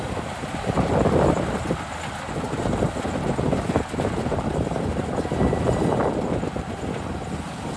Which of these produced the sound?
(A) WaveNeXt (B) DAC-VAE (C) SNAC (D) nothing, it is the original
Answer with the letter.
D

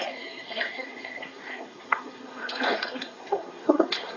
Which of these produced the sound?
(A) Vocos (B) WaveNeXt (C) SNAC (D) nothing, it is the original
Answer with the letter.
C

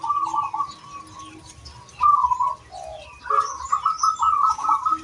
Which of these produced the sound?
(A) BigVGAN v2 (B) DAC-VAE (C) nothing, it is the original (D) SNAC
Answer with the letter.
C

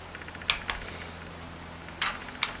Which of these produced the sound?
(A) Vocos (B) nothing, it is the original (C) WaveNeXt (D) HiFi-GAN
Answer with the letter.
B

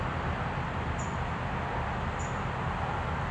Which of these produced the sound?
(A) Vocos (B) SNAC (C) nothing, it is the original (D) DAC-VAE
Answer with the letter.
C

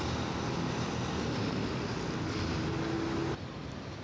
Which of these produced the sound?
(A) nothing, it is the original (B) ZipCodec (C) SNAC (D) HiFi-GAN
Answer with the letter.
A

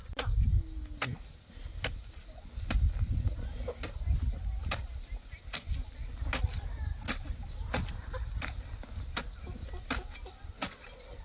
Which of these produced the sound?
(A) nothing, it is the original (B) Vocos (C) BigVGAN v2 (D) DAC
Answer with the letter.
A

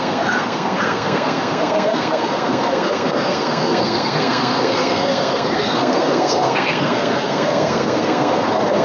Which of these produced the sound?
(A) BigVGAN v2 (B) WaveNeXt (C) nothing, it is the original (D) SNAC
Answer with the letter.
D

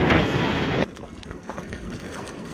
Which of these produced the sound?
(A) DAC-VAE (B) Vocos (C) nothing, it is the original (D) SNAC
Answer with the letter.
D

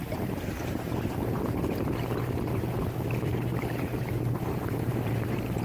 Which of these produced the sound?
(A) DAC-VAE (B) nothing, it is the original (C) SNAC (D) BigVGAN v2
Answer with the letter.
D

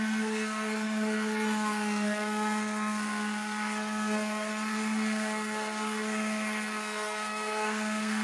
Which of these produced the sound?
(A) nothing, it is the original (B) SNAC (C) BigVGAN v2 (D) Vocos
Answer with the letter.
B